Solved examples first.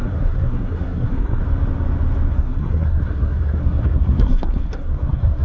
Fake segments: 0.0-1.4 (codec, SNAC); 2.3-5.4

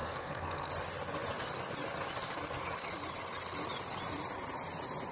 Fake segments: 0.0-0.7 (codec, SNAC)